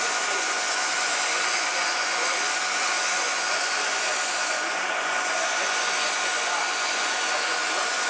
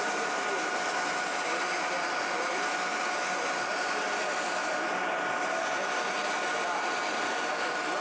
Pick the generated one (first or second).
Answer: first